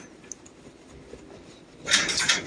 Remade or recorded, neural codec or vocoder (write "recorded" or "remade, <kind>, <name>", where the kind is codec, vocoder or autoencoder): recorded